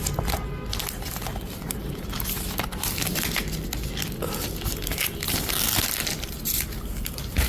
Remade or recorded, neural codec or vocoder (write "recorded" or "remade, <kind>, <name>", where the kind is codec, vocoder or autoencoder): recorded